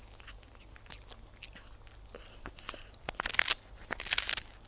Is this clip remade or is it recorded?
recorded